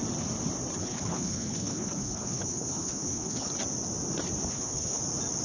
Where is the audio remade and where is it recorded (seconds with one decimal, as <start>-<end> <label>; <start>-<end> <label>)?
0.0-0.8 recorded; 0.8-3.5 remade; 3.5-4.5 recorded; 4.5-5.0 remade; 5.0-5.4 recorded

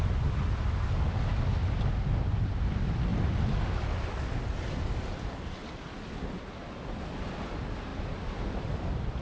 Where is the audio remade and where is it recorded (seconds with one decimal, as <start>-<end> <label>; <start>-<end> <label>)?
0.0-5.6 recorded; 5.6-6.2 remade; 6.2-7.9 recorded; 7.9-9.2 remade

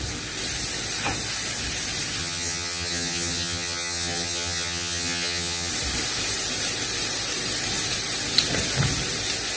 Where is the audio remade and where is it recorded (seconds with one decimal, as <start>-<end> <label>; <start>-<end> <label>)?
0.0-2.2 recorded; 2.2-5.7 remade; 5.7-9.6 recorded

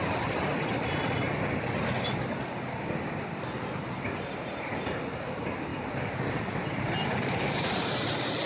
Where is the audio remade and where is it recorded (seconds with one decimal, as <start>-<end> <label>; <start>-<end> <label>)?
0.0-5.7 recorded; 5.7-7.9 remade; 7.9-8.5 recorded

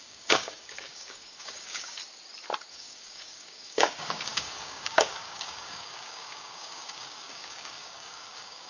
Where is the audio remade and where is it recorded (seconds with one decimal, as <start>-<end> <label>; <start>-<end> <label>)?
0.0-2.0 remade; 2.0-2.7 recorded; 2.7-8.7 remade

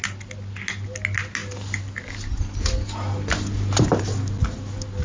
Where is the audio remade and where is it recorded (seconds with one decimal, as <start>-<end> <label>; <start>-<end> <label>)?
0.0-5.0 recorded